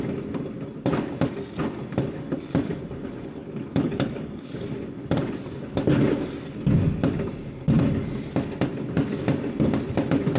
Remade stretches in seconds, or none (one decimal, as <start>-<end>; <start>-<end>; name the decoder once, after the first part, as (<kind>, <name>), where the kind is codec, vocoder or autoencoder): 3.4-4.5 (codec, DAC)